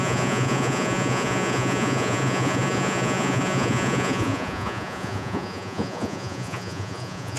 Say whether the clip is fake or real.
fake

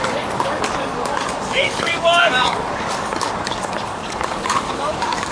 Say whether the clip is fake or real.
fake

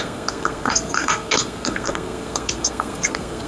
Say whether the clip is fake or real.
fake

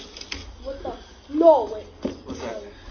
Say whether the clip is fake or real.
real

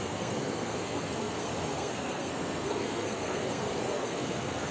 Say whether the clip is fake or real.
fake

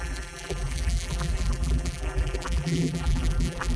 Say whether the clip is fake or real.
fake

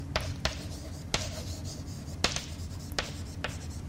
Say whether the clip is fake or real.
real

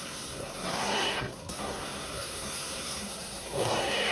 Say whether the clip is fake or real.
fake